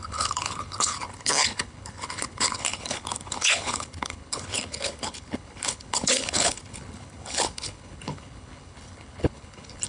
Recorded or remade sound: remade